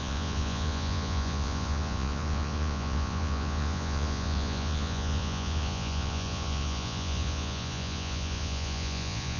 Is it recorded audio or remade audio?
remade